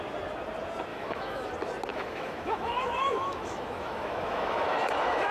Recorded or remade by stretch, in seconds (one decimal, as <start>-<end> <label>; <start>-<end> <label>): 0.0-0.9 recorded; 0.9-1.5 remade; 1.5-1.9 recorded; 1.9-5.3 remade